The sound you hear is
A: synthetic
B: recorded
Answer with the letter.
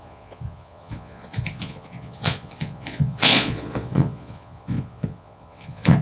A